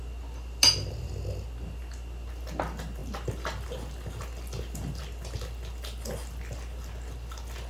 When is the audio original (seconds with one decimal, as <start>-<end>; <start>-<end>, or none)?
0.0-7.7